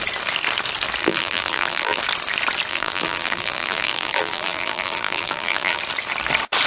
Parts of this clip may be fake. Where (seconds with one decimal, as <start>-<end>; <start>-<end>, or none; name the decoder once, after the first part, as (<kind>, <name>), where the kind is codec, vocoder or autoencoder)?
1.0-2.0 (vocoder, BigVGAN v2); 2.7-5.8